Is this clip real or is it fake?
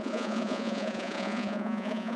fake